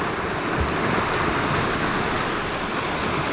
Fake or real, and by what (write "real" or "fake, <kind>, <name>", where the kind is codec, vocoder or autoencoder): real